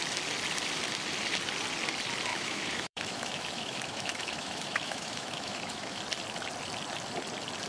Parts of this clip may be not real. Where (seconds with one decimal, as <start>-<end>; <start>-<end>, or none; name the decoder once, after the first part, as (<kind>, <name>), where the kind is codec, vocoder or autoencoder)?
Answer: 2.3-6.0 (autoencoder, DAC-VAE)